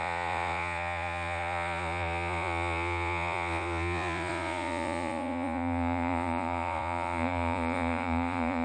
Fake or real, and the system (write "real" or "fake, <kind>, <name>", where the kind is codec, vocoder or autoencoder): fake, vocoder, Vocos